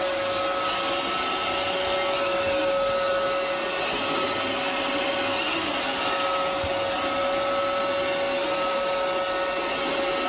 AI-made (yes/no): no